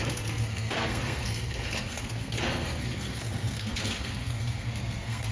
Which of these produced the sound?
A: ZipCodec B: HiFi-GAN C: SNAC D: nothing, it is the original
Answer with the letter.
C